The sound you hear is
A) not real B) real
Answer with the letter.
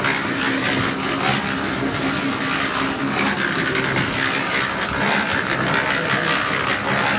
B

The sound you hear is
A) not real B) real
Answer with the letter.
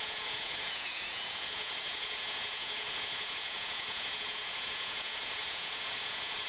A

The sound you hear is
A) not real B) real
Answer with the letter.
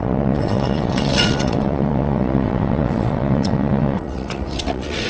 A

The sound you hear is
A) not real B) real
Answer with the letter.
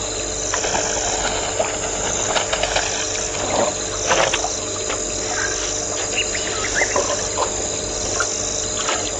A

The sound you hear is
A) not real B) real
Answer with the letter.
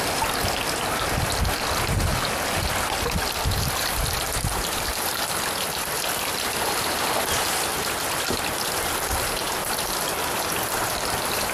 B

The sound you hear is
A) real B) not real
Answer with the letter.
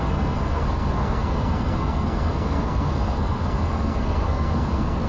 B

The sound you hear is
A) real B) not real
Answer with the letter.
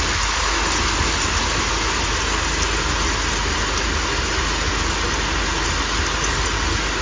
A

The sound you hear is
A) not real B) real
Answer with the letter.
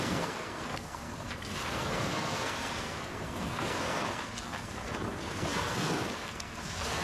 A